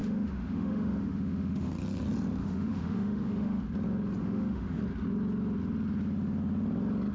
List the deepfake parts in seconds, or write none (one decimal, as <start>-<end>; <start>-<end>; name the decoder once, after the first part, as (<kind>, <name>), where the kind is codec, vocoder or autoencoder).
0.0-1.7 (autoencoder, DAC-VAE); 2.4-3.6; 4.2-4.8